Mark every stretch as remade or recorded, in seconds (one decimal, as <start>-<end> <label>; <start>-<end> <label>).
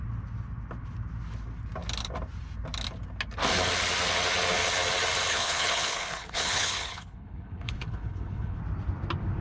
0.0-5.3 recorded; 5.3-8.6 remade; 8.6-9.4 recorded